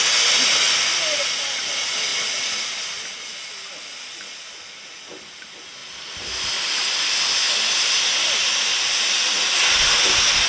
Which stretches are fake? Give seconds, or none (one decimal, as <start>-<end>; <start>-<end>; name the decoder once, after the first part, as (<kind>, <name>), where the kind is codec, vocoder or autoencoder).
none